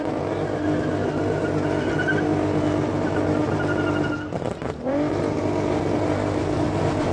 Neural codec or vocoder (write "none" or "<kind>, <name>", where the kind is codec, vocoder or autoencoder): none